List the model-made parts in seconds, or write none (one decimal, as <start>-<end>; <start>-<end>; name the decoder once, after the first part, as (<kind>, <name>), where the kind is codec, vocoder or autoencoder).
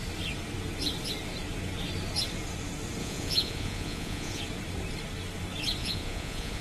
3.0-4.4 (vocoder, Vocos); 5.8-6.6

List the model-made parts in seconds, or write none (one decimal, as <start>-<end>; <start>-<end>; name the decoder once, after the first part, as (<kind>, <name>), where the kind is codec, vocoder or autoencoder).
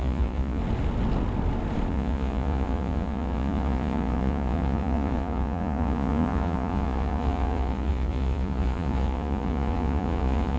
0.0-0.6 (vocoder, Vocos); 1.9-10.6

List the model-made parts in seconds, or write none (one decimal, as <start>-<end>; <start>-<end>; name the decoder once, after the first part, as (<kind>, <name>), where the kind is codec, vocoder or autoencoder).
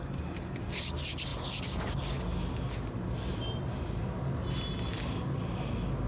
none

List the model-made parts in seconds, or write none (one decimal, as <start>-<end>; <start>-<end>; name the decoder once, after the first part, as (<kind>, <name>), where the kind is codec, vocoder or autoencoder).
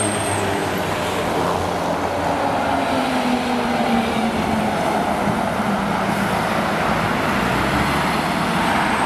none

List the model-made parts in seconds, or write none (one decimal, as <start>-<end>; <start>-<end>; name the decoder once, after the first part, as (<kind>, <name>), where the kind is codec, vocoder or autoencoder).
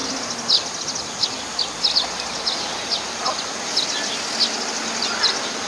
none